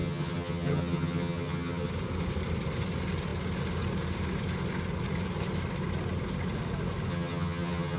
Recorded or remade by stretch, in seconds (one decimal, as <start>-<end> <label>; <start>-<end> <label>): 0.0-1.9 remade; 1.9-7.1 recorded; 7.1-8.0 remade